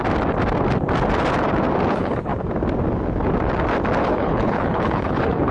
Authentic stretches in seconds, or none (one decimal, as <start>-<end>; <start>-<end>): 0.0-1.9; 2.3-4.0